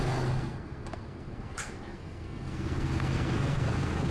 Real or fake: fake